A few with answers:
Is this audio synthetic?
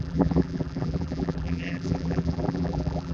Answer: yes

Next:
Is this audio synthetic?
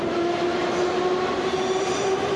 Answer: no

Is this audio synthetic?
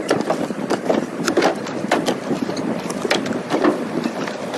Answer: no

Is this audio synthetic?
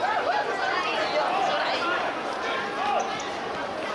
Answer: no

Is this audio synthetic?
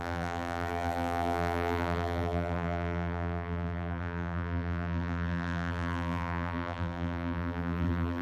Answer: yes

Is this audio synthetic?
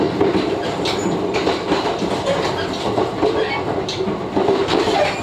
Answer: no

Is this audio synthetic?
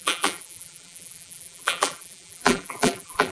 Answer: yes